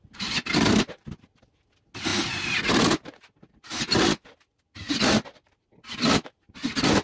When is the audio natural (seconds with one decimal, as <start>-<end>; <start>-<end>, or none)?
0.0-7.0